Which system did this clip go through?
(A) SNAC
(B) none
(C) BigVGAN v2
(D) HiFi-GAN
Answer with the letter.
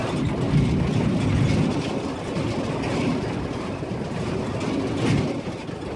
B